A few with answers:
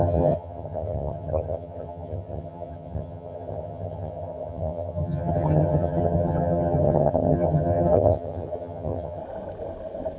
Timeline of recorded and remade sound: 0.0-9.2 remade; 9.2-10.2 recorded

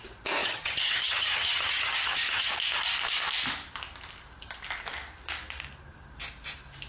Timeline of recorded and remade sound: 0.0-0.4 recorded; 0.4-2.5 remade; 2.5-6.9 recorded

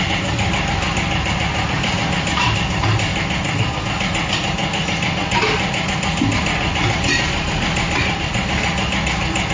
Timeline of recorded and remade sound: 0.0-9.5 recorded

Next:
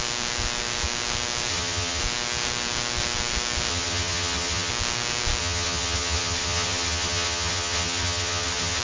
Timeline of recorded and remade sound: 0.0-1.5 recorded; 1.5-2.0 remade; 2.0-3.7 recorded; 3.7-4.7 remade; 4.7-5.4 recorded; 5.4-8.8 remade

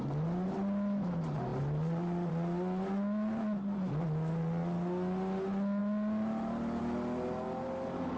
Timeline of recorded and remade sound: 0.0-8.2 recorded

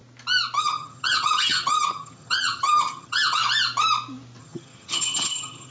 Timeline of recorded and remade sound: 0.0-0.6 recorded; 0.6-3.4 remade; 3.4-4.4 recorded; 4.4-5.7 remade

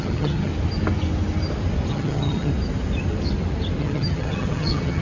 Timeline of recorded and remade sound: 0.0-0.5 remade; 0.5-1.9 recorded; 1.9-2.5 remade; 2.5-3.8 recorded; 3.8-5.0 remade